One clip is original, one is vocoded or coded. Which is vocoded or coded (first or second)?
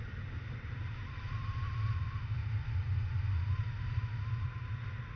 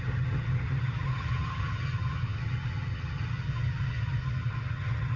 second